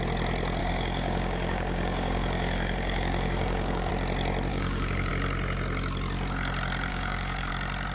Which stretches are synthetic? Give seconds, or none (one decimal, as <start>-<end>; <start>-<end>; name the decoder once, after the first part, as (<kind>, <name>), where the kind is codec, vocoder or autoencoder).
0.6-3.9 (codec, DAC); 4.5-5.1; 6.9-7.5